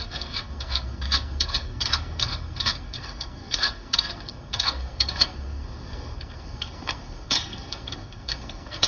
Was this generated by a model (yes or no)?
yes